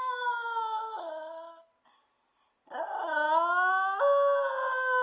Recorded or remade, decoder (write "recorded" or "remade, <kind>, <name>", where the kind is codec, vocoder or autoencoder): recorded